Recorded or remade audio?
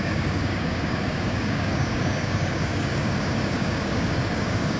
remade